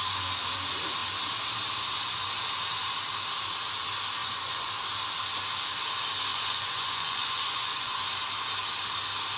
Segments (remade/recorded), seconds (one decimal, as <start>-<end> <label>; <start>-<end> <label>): 0.0-4.2 recorded; 4.2-4.7 remade; 4.7-6.3 recorded; 6.3-8.0 remade; 8.0-9.4 recorded